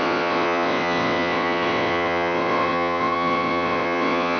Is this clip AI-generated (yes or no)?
yes